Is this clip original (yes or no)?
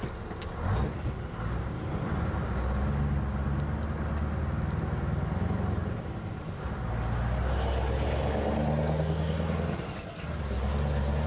yes